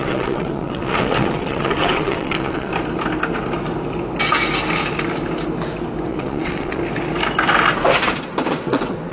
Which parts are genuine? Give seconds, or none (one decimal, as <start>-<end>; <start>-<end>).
2.7-6.1; 6.8-8.5